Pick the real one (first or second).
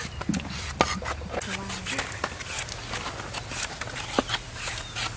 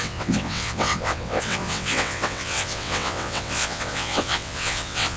first